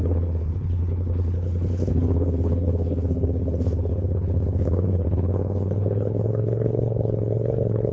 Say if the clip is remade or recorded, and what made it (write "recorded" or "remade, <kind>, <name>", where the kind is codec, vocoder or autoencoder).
remade, codec, HILCodec